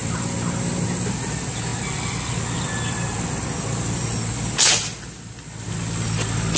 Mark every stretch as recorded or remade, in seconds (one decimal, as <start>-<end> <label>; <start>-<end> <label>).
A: 0.0-6.6 recorded